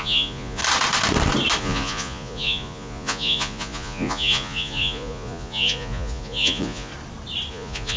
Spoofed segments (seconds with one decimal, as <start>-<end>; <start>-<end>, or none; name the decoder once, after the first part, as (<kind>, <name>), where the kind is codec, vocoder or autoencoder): 0.0-0.6 (vocoder, Vocos); 1.6-6.9; 7.5-8.0